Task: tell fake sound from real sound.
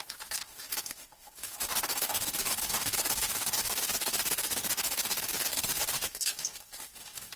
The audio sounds fake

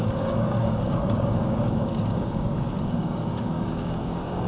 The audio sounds fake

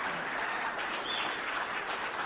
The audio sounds fake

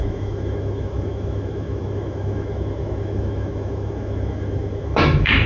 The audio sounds fake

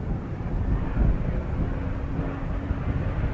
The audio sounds real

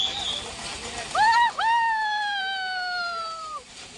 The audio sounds fake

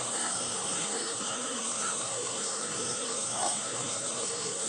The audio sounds fake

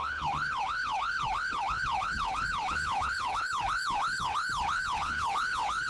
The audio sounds fake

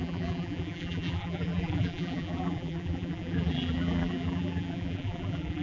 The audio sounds fake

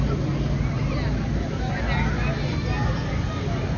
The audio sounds real